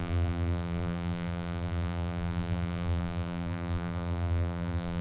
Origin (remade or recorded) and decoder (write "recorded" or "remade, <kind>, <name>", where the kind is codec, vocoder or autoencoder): remade, vocoder, BigVGAN v2